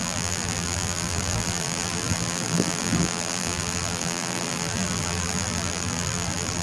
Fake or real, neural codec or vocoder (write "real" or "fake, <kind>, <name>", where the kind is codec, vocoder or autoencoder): fake, vocoder, BigVGAN v2